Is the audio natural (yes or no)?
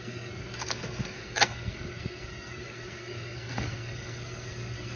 no